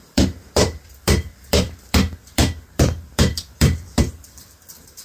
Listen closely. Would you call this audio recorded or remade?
remade